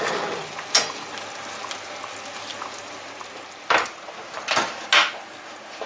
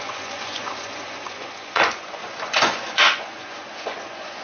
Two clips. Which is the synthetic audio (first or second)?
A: second